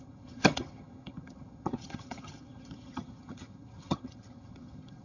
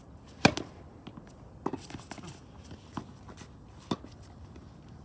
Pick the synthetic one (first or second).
first